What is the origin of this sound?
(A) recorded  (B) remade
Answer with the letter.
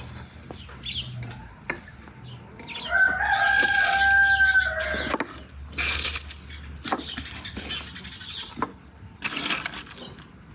A